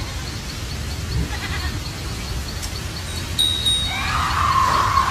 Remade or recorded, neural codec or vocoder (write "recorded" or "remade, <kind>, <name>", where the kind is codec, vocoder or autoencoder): recorded